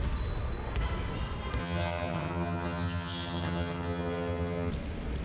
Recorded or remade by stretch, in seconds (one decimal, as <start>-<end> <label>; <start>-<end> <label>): 0.0-1.6 recorded; 1.6-4.7 remade; 4.7-5.2 recorded